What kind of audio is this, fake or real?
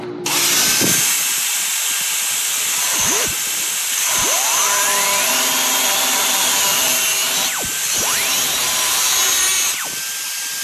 real